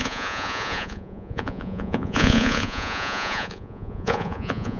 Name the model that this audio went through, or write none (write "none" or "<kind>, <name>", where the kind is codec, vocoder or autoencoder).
vocoder, Vocos